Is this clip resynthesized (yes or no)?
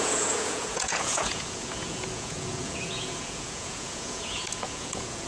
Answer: yes